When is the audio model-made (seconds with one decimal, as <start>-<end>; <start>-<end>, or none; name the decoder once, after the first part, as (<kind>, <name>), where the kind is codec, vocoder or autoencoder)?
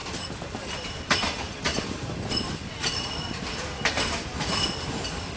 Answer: none